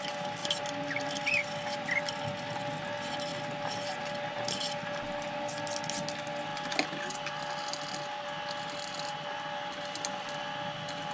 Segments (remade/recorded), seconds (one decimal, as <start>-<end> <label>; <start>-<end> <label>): 0.0-11.1 recorded